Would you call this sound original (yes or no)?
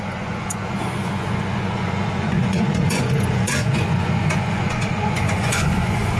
no